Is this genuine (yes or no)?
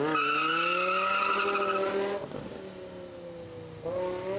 yes